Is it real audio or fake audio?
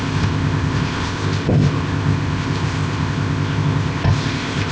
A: fake